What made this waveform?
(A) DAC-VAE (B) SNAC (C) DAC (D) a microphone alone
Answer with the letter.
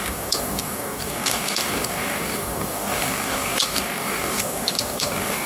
C